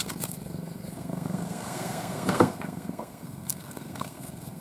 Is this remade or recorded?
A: remade